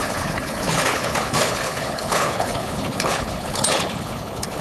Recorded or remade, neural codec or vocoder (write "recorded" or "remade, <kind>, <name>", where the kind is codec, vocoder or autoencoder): remade, codec, HILCodec